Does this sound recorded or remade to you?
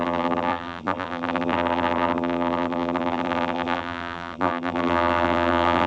remade